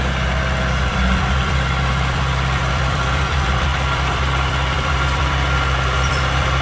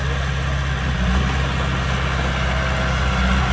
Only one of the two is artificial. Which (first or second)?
first